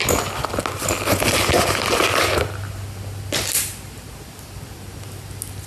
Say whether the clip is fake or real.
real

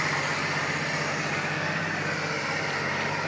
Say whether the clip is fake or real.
real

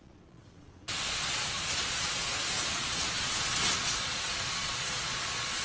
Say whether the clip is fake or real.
fake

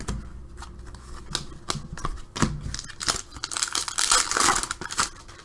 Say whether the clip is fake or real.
real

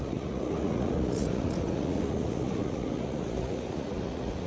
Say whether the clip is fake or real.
fake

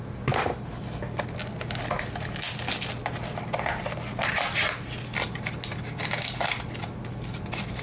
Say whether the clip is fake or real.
real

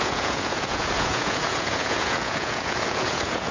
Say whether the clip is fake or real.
fake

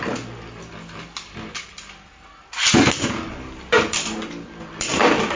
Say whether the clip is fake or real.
real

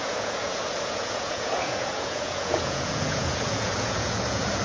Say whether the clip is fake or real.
fake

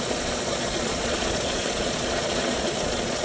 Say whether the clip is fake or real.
fake